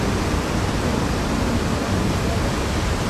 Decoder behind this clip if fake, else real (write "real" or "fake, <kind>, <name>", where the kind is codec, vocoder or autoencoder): real